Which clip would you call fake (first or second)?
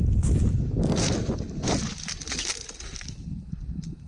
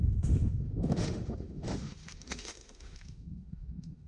second